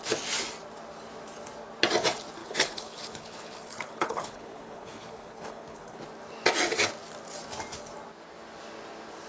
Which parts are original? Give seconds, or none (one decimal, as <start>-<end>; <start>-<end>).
0.0-2.4; 6.0-9.3